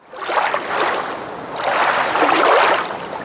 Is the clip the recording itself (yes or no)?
yes